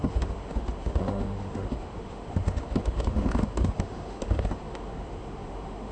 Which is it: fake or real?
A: fake